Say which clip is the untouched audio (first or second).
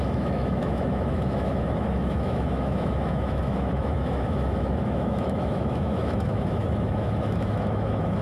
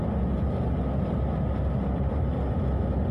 second